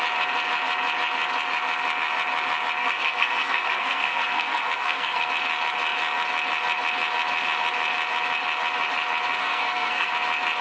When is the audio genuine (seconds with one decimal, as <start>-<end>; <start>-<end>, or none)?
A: 0.0-2.8; 5.3-9.4; 10.1-10.6